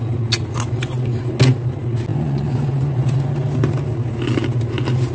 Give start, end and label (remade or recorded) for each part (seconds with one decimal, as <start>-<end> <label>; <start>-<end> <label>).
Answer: 0.0-2.1 recorded; 2.1-3.3 remade; 3.3-5.1 recorded